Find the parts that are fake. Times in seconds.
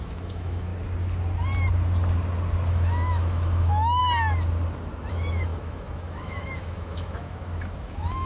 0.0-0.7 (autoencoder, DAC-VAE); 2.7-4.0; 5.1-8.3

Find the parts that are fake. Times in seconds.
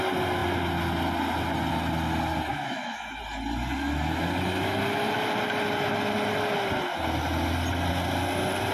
2.5-3.2 (autoencoder, DAC-VAE)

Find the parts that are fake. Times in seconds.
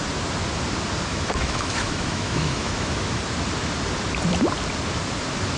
1.1-3.2 (autoencoder, DAC-VAE)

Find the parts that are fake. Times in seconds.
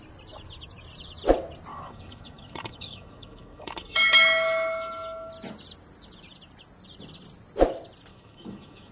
1.7-5.3 (autoencoder, DAC-VAE); 8.1-8.9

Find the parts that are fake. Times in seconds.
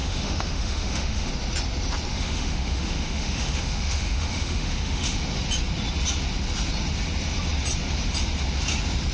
0.0-1.3 (autoencoder, DAC-VAE); 2.1-5.2